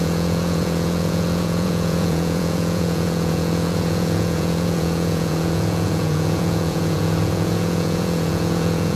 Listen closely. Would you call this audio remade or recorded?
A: remade